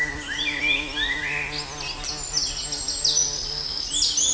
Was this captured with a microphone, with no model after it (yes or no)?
yes